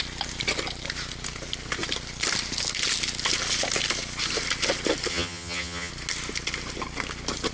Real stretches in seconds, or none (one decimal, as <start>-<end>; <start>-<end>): 0.0-5.1; 5.9-7.5